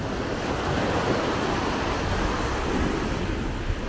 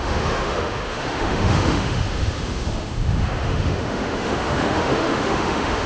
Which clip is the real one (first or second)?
first